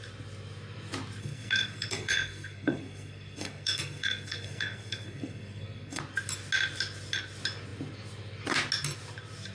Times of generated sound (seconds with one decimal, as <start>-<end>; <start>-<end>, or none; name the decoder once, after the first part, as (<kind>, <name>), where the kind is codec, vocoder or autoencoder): 1.2-6.0 (codec, SNAC)

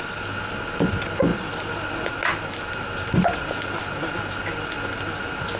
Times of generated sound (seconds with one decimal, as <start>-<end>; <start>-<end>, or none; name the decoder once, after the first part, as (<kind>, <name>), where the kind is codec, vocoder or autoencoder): none

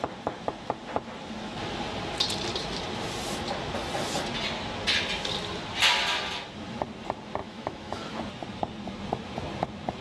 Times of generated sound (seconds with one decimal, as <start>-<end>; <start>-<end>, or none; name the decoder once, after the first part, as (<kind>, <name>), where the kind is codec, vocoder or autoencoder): 7.4-8.2 (autoencoder, DAC-VAE)

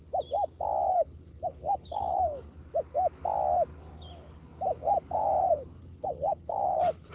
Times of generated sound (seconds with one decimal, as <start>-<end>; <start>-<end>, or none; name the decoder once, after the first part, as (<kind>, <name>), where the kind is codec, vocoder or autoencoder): 0.9-2.2 (codec, HILCodec); 5.8-7.1